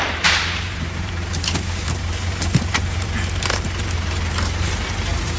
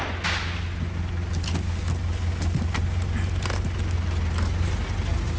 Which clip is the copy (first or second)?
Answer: first